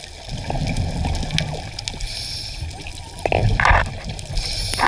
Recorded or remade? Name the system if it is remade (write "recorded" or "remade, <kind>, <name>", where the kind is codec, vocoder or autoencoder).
recorded